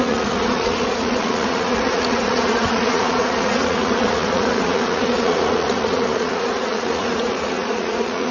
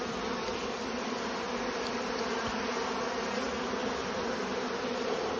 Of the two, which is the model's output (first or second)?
first